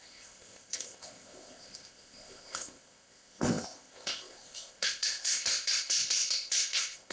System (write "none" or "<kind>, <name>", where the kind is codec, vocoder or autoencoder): codec, ZipCodec